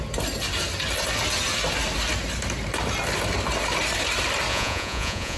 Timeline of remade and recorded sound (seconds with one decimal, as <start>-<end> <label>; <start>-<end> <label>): 0.0-4.5 recorded; 4.5-5.4 remade